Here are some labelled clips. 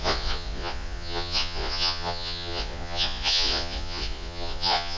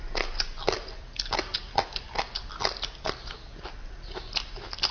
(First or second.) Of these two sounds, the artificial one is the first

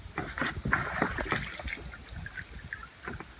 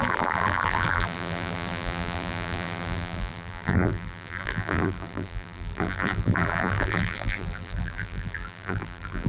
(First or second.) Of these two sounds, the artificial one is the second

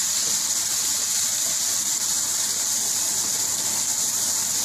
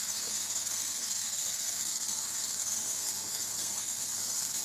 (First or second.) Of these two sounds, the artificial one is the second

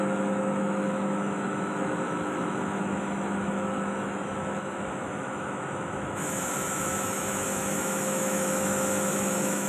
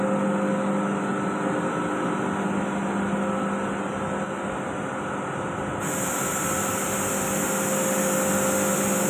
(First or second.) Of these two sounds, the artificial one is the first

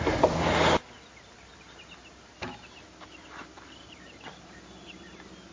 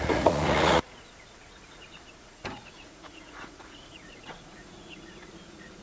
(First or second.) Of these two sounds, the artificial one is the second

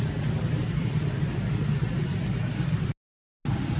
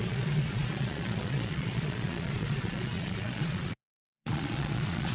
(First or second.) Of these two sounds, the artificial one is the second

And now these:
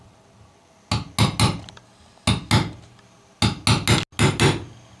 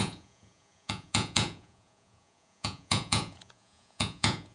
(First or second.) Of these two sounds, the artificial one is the second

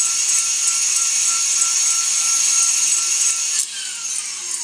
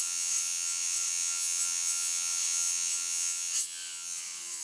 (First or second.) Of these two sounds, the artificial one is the second